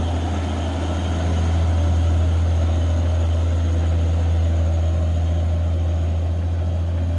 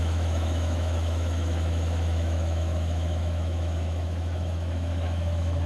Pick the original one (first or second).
first